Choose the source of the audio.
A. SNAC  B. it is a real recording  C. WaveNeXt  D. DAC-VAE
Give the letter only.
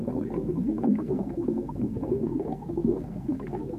A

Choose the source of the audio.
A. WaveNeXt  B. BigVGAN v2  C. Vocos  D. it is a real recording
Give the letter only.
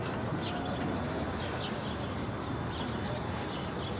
D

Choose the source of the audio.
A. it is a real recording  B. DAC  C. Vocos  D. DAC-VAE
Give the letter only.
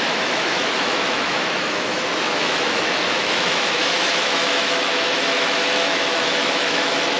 D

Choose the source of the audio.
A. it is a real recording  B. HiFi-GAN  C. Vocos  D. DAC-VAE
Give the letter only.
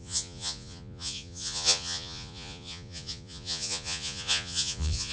C